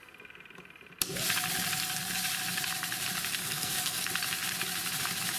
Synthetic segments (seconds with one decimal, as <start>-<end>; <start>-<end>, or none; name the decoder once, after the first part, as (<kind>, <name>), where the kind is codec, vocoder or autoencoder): 3.4-4.0 (codec, SNAC)